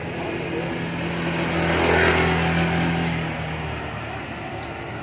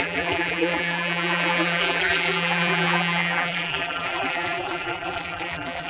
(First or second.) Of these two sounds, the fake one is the second